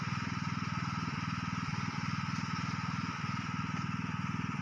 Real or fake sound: real